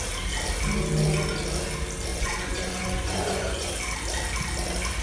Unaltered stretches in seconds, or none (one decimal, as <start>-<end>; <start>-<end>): 0.0-2.1; 3.7-5.0